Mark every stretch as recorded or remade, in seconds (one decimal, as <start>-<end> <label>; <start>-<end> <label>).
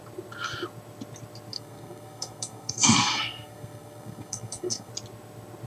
0.0-1.5 recorded; 1.5-4.9 remade; 4.9-5.7 recorded